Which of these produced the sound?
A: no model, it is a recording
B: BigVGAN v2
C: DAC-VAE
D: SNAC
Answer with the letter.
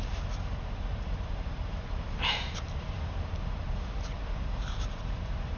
B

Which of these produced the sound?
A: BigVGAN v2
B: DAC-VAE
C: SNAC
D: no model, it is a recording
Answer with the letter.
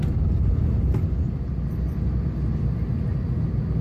D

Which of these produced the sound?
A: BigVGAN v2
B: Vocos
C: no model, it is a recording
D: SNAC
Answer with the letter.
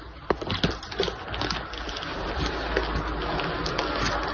C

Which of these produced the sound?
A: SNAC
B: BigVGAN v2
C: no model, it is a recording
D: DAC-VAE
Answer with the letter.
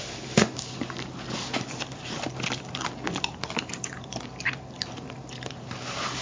B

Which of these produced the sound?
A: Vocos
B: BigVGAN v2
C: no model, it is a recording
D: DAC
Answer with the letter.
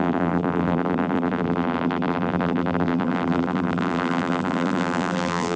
B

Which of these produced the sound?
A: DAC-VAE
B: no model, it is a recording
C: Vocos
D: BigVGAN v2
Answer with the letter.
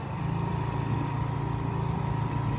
D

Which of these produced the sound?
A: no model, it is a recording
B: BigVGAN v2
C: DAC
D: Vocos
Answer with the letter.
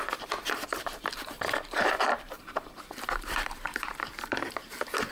B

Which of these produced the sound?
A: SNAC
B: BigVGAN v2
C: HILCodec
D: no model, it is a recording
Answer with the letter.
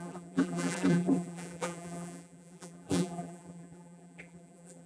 B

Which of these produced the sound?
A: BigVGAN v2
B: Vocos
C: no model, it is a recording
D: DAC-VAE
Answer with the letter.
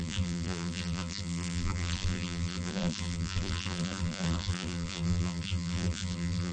A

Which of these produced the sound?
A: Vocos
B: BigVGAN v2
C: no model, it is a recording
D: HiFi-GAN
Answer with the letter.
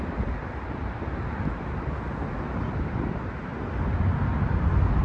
C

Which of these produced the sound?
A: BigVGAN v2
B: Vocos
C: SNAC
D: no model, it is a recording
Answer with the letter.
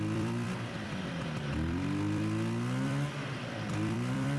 A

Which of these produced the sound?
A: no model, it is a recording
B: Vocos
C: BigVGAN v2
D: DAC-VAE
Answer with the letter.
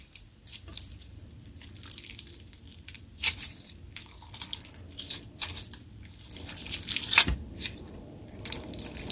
C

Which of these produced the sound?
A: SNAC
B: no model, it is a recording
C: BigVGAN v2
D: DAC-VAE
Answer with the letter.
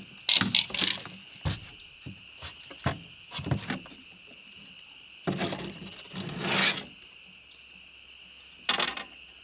B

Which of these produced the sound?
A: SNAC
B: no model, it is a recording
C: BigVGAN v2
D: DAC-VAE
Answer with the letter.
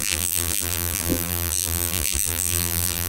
C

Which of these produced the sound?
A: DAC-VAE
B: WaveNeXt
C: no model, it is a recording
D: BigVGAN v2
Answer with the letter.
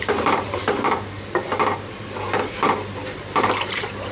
D